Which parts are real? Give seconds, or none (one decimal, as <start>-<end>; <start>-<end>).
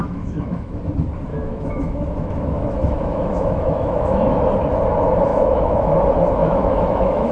0.8-1.3; 4.4-5.3; 6.0-6.4